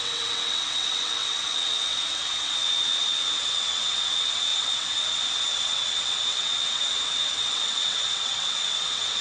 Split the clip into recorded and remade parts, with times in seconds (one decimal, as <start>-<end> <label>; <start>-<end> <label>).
0.0-9.2 remade